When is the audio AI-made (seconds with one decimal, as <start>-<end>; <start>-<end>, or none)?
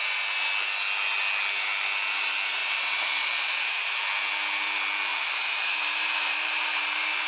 2.6-4.0; 5.1-7.3